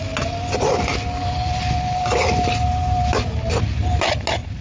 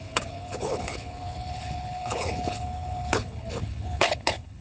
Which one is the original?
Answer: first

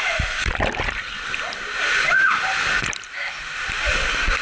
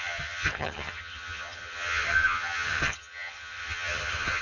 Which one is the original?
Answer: first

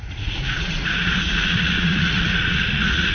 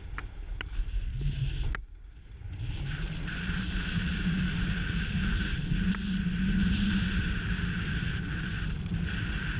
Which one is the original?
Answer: second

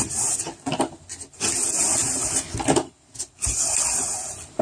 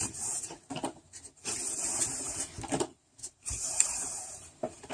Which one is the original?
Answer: first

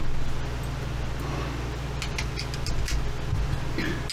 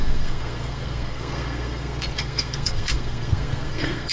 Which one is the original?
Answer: first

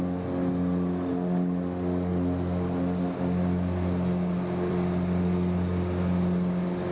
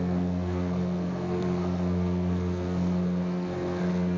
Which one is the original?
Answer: first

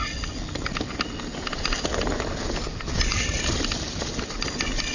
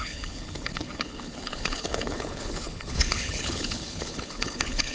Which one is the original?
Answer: first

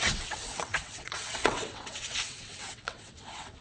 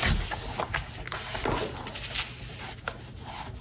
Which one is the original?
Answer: second